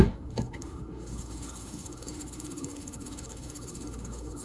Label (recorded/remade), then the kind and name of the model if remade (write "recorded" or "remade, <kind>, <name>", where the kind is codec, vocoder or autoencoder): remade, codec, SNAC